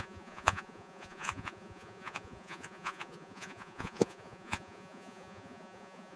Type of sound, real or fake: fake